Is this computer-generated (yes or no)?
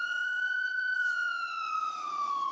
yes